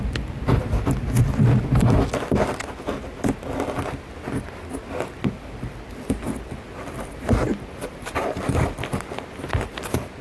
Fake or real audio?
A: real